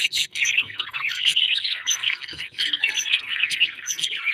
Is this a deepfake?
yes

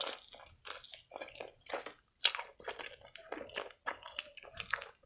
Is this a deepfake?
no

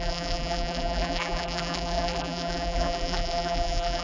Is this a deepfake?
yes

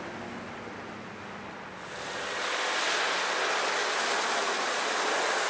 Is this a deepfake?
no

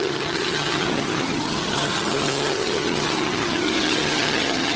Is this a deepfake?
yes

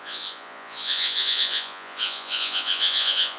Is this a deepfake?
yes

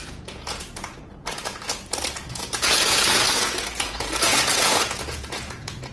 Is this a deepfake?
yes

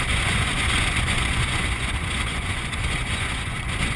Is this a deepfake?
yes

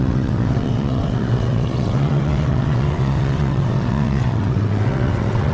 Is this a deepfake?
yes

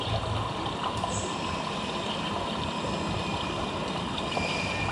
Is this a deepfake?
no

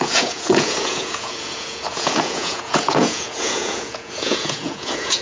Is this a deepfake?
yes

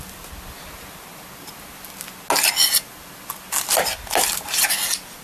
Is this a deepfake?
no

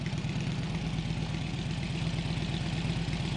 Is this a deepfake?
no